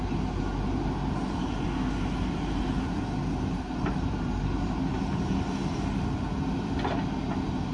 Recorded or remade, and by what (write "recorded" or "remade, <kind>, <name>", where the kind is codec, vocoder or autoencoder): recorded